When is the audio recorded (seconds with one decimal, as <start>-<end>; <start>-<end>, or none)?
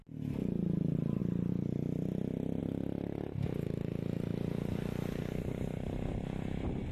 0.0-6.9